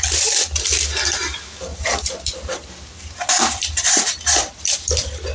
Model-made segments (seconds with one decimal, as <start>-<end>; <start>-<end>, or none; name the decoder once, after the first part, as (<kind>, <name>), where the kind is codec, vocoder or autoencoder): 1.7-4.0 (vocoder, BigVGAN v2)